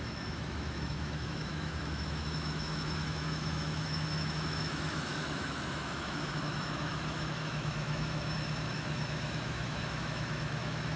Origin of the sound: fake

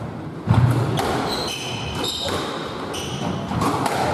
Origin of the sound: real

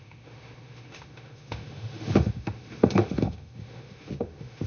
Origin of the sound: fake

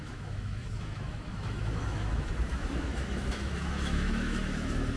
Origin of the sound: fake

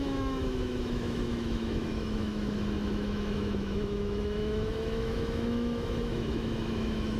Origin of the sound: fake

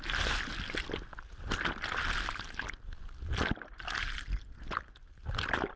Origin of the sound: real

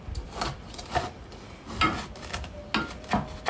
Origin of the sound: real